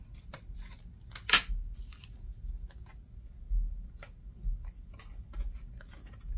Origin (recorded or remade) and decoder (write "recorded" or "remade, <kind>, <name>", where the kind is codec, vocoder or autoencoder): recorded